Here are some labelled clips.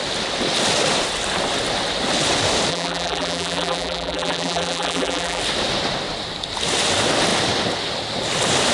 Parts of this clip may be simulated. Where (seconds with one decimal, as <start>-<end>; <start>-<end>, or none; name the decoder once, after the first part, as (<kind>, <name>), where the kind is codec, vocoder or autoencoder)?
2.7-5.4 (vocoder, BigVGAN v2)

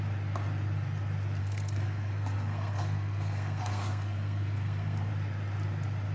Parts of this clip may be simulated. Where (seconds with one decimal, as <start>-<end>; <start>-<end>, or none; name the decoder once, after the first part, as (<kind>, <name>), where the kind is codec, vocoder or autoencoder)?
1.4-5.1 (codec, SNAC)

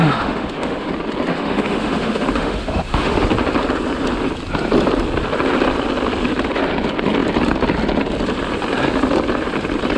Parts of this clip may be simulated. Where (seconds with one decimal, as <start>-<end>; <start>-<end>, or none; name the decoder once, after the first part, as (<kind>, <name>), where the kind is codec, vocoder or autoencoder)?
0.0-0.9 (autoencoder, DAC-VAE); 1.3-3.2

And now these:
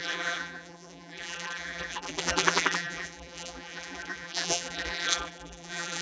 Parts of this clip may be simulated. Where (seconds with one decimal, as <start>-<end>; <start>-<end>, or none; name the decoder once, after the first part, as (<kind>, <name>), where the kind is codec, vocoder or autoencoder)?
0.0-6.0 (vocoder, BigVGAN v2)